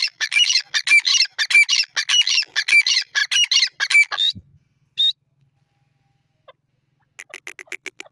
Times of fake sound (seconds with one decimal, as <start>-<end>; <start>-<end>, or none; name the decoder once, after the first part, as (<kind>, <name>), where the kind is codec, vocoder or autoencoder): 0.0-1.1 (vocoder, BigVGAN v2); 1.7-3.2; 3.9-4.5; 7.6-8.1